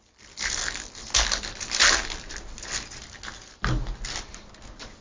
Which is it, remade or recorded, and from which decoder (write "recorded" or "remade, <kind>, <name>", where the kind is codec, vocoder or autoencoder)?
recorded